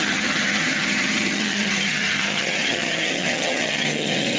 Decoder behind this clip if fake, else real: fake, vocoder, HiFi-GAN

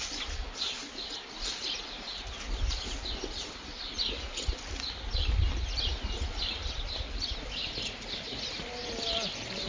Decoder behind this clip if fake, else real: real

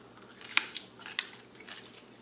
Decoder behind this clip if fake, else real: real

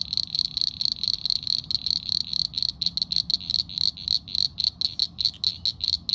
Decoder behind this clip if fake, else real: real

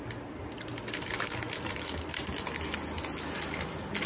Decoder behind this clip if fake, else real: real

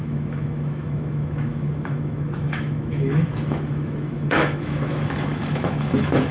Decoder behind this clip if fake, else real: fake, autoencoder, DAC-VAE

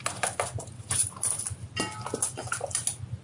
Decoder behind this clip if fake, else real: real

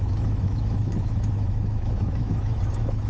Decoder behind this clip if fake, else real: fake, autoencoder, DAC-VAE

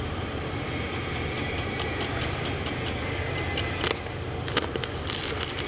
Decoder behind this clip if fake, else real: real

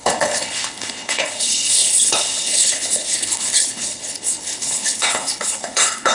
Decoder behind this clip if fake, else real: fake, codec, HILCodec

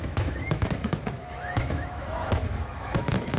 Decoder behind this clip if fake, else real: fake, autoencoder, DAC-VAE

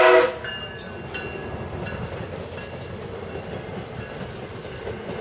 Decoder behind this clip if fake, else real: real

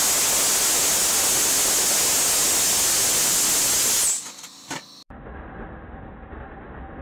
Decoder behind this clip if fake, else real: real